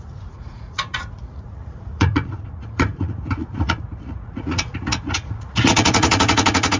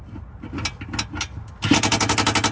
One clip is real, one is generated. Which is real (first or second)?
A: second